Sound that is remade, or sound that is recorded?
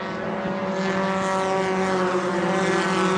recorded